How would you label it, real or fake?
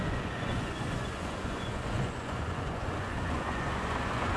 fake